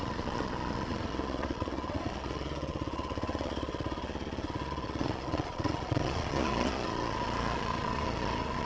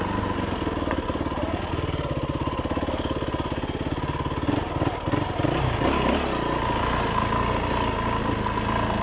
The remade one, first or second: first